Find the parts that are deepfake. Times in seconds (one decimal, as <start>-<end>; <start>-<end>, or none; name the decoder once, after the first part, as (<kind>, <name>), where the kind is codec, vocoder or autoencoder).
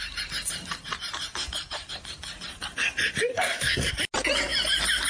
3.3-3.9 (codec, SNAC)